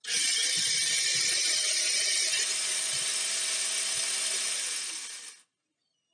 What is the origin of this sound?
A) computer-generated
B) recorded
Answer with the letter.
B